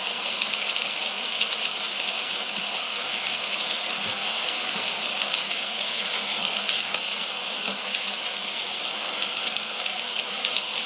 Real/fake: fake